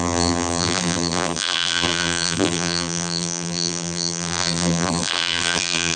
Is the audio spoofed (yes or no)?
yes